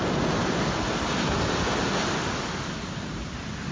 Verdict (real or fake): real